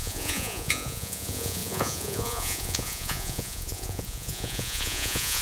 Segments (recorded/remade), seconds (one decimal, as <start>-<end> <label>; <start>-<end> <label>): 0.0-5.4 remade